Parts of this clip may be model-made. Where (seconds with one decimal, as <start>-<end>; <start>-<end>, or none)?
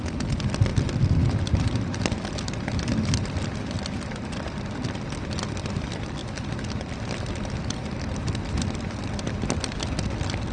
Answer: 0.0-0.7; 2.3-10.5